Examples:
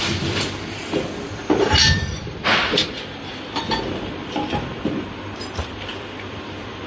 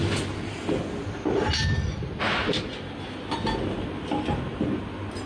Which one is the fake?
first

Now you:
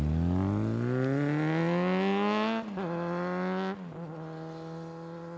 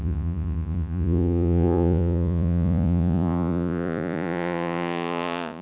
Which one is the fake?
second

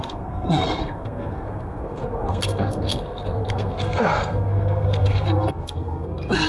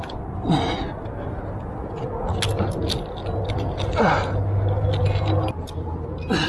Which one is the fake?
first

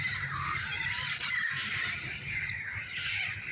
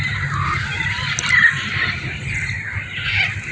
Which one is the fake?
first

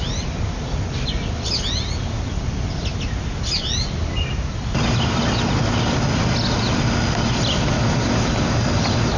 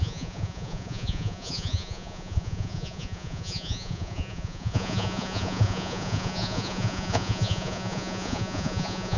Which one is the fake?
second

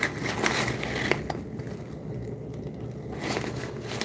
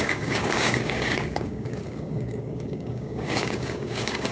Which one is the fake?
second